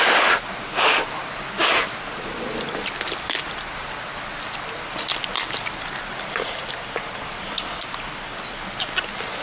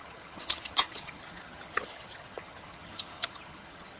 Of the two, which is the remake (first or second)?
second